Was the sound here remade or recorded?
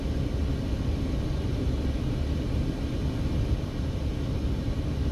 recorded